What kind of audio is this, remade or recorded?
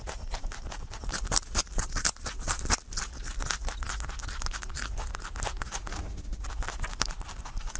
recorded